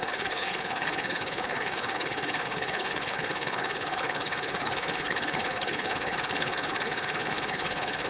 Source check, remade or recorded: remade